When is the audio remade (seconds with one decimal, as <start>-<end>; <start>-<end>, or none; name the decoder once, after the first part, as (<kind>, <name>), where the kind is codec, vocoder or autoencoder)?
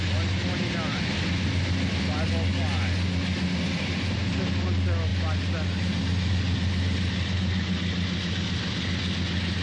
none